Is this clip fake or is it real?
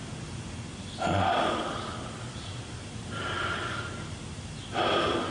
real